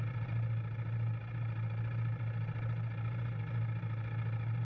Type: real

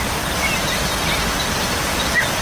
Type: real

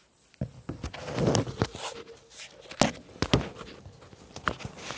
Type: real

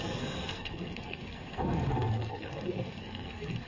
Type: fake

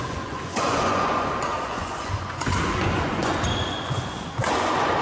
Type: fake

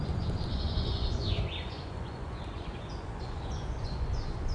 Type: fake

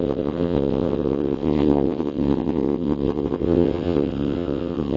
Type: fake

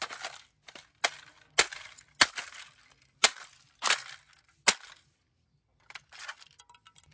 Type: real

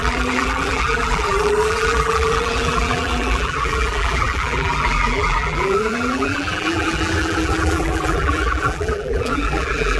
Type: fake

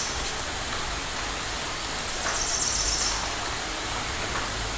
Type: real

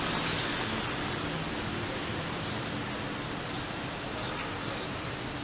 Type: real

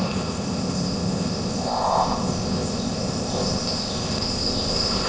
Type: fake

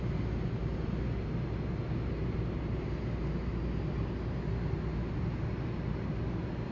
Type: real